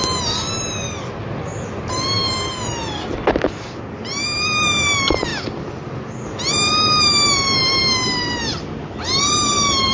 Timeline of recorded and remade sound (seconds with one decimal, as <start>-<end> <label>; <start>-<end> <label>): 0.0-9.9 recorded

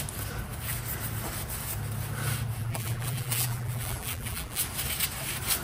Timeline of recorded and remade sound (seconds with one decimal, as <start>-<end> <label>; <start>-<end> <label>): 0.0-2.6 recorded; 2.6-4.6 remade; 4.6-5.6 recorded